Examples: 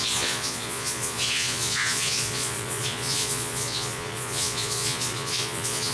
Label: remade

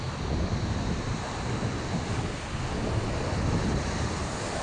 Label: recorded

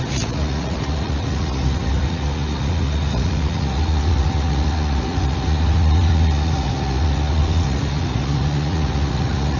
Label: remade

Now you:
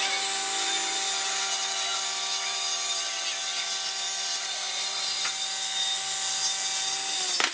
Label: recorded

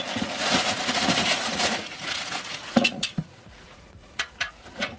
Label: remade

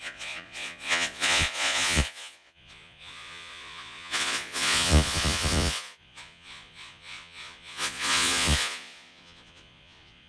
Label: remade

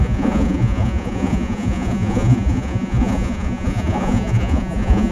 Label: remade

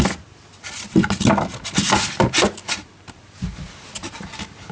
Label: recorded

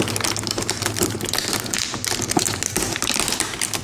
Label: recorded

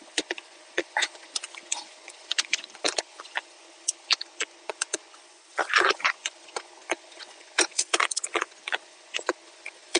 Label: remade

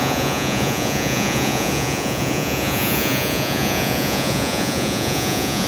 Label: remade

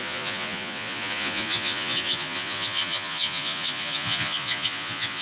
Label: remade